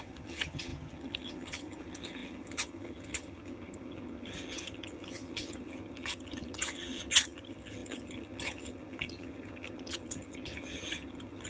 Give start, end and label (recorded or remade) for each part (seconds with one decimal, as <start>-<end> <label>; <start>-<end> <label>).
0.0-11.5 remade